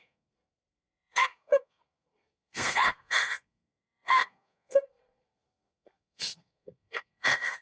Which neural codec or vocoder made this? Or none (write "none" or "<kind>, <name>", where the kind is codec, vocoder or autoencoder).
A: codec, SNAC